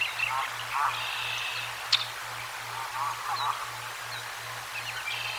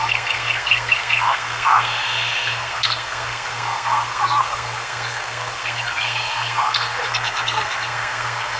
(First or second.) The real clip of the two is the first